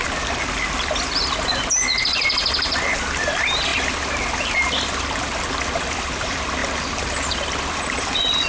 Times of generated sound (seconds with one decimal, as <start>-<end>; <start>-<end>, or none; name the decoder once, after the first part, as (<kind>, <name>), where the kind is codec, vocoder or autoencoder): 2.0-8.5 (vocoder, BigVGAN v2)